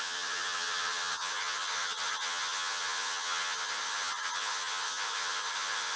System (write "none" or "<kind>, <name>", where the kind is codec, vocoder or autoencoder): vocoder, HiFi-GAN